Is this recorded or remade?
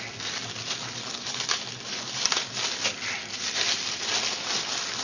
recorded